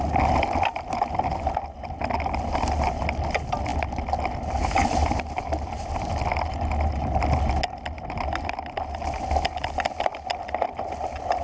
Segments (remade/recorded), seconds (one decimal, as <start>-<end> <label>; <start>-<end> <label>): 0.0-4.8 recorded; 4.8-5.9 remade; 5.9-11.4 recorded

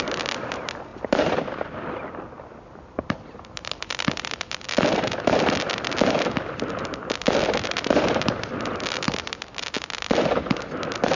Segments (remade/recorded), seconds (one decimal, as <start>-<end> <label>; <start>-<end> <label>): 0.0-0.9 recorded; 0.9-5.9 remade; 5.9-11.1 recorded

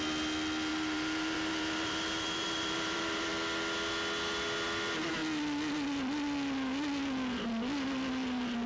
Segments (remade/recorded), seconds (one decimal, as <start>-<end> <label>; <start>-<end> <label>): 0.0-0.7 recorded; 0.7-3.3 remade; 3.3-8.7 recorded

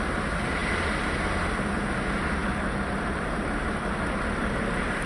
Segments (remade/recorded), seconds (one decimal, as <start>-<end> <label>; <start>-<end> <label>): 0.0-2.4 recorded; 2.4-5.1 remade

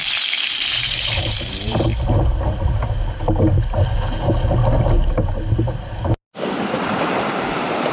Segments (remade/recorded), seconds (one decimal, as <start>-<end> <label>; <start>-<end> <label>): 0.0-1.9 remade; 1.9-6.6 recorded; 6.6-7.9 remade